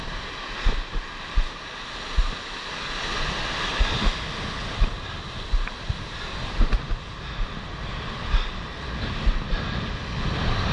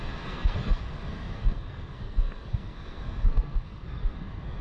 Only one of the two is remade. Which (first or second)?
second